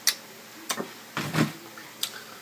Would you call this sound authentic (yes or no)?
yes